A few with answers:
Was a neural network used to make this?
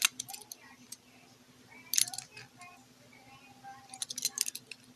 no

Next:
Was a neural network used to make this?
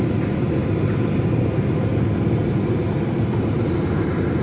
no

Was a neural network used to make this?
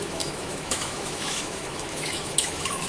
yes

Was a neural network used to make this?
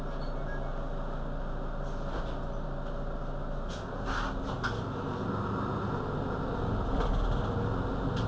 no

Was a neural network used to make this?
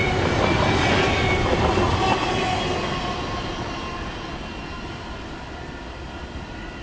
no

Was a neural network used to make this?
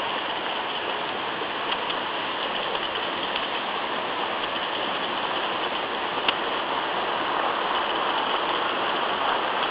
no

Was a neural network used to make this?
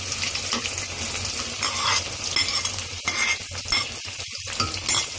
no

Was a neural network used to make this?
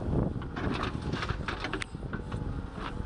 no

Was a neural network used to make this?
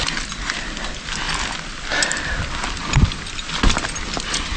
no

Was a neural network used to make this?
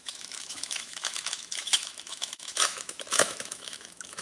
yes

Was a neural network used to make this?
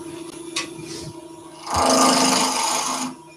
no